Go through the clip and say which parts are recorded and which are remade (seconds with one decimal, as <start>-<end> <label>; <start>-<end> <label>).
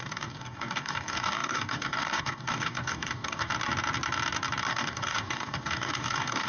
0.0-3.5 remade; 3.5-4.7 recorded; 4.7-6.5 remade